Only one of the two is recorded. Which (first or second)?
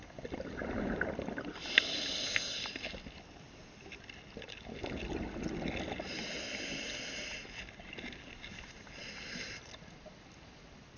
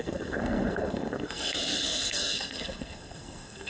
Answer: first